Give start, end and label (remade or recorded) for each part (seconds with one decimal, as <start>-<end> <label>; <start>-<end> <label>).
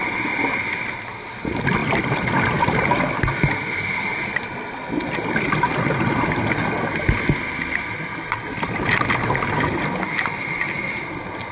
0.0-11.5 recorded